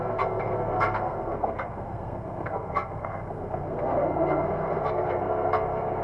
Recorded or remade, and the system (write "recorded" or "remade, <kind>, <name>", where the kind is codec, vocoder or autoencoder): remade, codec, SNAC